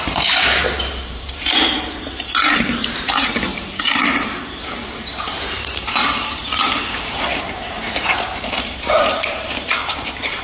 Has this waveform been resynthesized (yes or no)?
yes